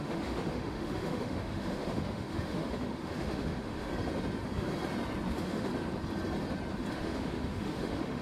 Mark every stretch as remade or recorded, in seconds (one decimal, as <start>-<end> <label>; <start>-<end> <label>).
0.0-3.9 remade; 3.9-5.3 recorded; 5.3-5.7 remade; 5.7-6.9 recorded; 6.9-8.2 remade